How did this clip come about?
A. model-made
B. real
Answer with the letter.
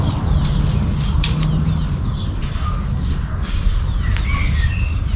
B